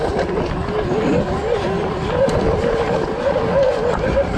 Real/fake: real